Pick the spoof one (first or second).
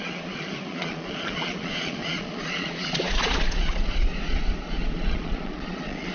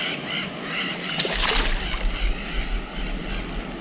first